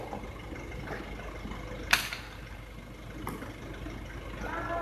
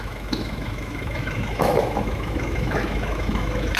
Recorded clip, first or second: first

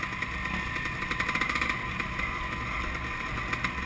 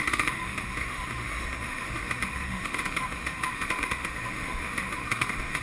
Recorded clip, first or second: first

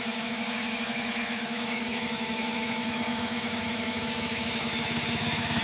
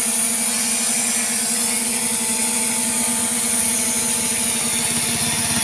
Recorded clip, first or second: second